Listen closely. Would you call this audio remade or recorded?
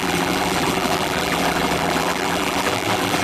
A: remade